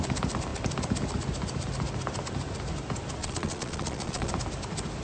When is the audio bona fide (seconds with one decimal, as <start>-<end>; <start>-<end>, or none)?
0.0-3.2; 4.3-5.0

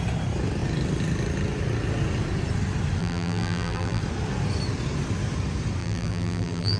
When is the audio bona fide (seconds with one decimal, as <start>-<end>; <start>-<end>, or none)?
0.0-3.0; 4.0-5.8

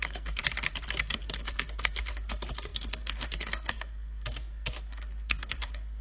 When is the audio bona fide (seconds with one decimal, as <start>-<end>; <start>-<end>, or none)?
0.4-1.0

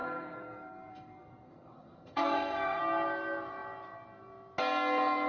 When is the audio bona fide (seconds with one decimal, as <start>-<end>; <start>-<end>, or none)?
2.8-5.3

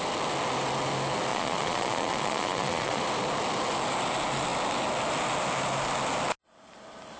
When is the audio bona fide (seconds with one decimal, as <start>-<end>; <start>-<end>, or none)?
0.0-1.3; 3.0-7.2

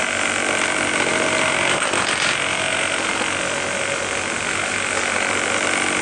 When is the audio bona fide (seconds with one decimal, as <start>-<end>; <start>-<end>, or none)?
0.0-6.0

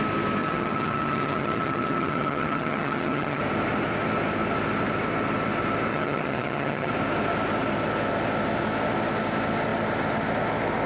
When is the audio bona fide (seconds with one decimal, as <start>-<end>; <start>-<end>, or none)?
0.0-0.4; 3.4-5.9; 6.9-10.9